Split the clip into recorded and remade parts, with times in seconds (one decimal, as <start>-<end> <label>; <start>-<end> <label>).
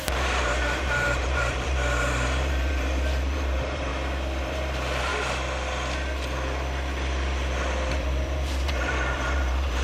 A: 0.0-3.9 remade; 3.9-4.4 recorded; 4.4-5.1 remade; 5.1-7.9 recorded; 7.9-9.8 remade